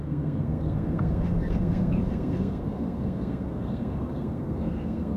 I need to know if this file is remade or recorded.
remade